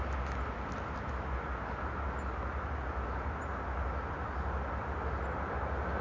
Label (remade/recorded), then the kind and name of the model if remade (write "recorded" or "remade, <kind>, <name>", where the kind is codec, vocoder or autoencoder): recorded